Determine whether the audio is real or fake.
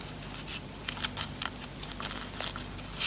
real